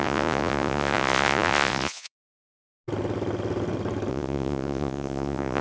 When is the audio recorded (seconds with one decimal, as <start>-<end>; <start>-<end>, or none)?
2.7-4.1